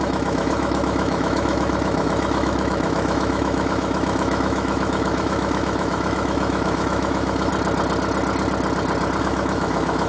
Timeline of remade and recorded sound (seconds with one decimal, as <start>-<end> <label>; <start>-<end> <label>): 0.0-7.5 remade; 7.5-9.2 recorded; 9.2-10.1 remade